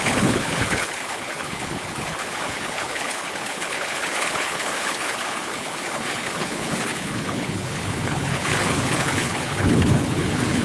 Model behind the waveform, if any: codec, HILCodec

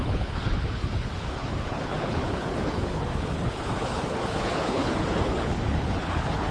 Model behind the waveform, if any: codec, HILCodec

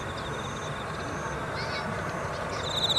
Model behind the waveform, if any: none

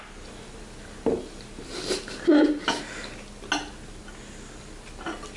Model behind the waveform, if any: none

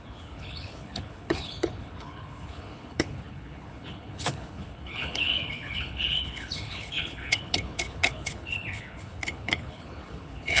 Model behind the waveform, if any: codec, HILCodec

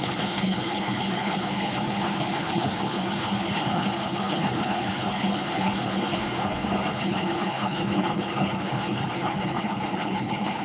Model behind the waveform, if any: codec, HILCodec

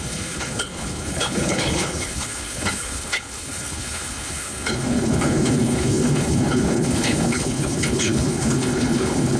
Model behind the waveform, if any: codec, HILCodec